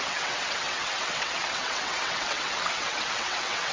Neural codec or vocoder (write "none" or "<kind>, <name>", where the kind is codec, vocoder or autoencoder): vocoder, WaveNeXt